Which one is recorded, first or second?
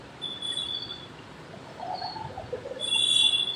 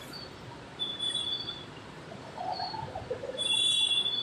first